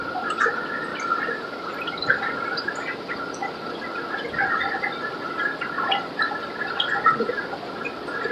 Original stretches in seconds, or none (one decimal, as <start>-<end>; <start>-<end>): 0.0-8.3